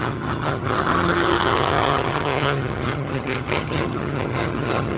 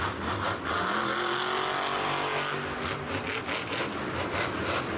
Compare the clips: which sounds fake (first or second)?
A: first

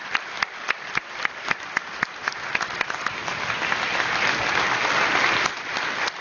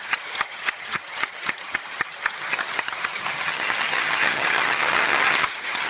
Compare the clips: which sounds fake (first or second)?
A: second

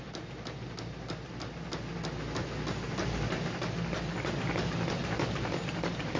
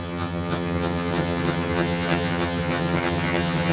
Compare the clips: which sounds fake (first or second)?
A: second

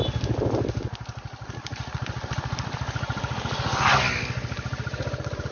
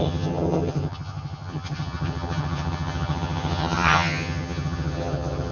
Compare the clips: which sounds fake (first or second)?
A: second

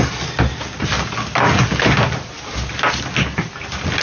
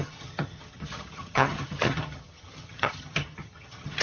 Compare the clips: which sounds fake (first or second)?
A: second